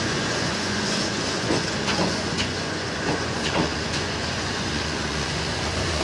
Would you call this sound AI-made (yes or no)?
yes